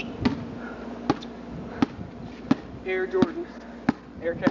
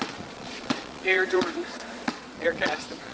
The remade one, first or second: second